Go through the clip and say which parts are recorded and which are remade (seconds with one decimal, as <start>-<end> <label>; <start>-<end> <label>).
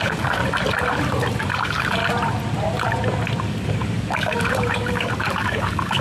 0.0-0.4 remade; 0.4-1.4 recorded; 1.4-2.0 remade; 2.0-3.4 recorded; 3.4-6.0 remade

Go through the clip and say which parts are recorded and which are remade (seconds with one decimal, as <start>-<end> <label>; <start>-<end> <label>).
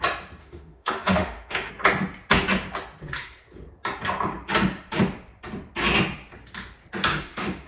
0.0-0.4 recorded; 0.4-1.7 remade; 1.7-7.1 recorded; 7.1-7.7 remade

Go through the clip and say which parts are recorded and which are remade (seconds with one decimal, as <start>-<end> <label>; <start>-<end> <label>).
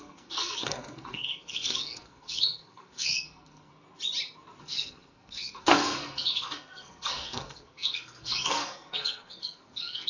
0.0-3.7 remade; 3.7-4.6 recorded; 4.6-10.1 remade